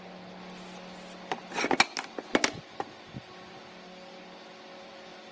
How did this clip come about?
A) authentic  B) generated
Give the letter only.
A